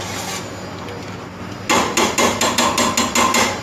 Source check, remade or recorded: recorded